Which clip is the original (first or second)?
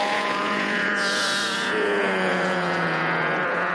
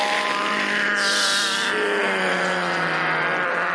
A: second